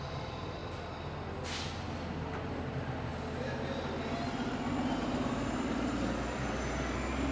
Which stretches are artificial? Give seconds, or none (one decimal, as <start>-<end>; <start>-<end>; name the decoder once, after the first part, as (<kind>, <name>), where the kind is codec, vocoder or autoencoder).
0.0-0.6 (vocoder, BigVGAN v2); 2.2-3.1; 5.0-7.3